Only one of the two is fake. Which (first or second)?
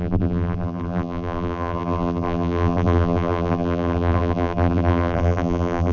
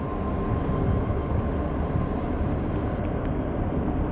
first